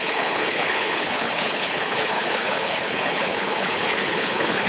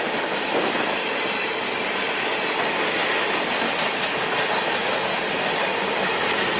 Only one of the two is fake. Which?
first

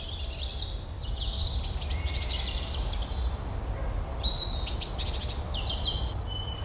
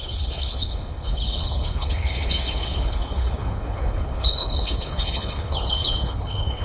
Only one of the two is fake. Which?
second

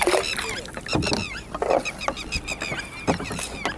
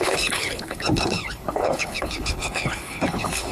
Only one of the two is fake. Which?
second